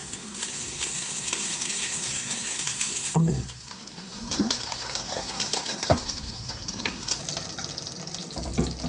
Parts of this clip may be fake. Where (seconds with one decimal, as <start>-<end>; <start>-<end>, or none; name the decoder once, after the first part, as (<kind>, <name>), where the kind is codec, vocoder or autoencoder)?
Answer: 0.0-7.2 (codec, SNAC)